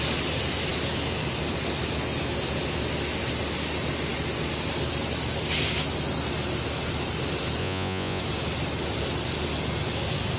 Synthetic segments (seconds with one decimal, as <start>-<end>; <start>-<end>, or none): 7.6-8.2